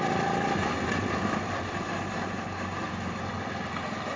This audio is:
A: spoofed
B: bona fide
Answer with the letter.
B